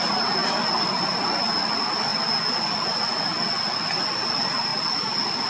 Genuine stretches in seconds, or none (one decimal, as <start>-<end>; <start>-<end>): 0.0-5.5